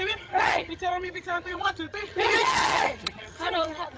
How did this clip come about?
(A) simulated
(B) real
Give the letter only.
A